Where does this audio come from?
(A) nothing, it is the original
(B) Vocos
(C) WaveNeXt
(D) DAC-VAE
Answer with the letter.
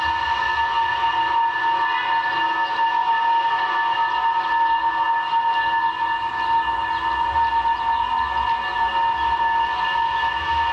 A